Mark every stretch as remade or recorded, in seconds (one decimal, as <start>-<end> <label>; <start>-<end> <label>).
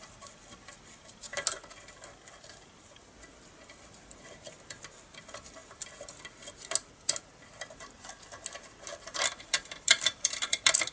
0.0-8.9 recorded; 8.9-10.9 remade